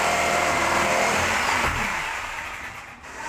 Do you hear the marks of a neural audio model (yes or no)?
yes